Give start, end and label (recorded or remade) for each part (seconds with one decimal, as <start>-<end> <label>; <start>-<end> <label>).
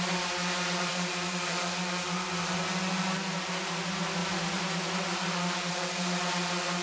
0.0-6.8 recorded